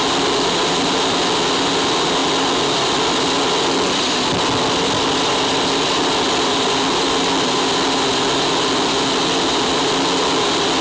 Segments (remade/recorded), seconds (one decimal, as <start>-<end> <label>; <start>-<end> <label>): 0.0-10.8 recorded